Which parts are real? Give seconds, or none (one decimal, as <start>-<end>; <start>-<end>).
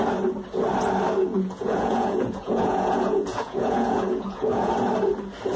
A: 0.0-1.3; 4.7-5.6